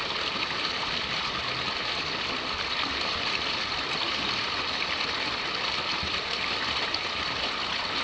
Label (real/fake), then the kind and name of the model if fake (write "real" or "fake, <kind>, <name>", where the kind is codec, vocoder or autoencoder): real